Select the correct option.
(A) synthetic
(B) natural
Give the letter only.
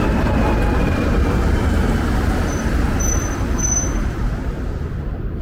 A